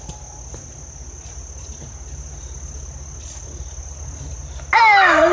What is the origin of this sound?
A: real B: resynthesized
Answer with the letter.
A